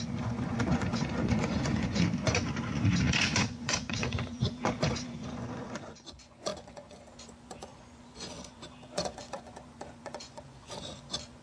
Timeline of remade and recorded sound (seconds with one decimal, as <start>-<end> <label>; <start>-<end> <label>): 0.0-11.4 remade